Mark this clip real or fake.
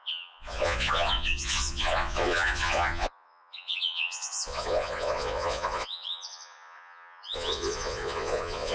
fake